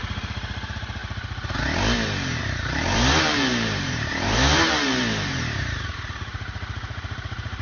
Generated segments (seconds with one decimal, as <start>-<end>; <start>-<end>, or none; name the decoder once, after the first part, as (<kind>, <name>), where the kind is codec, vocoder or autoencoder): 0.0-1.0 (vocoder, BigVGAN v2); 2.4-7.6